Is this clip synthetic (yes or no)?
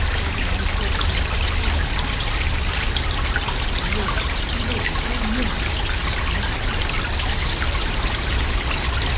no